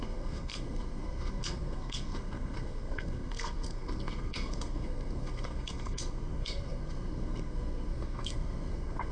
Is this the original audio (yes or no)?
no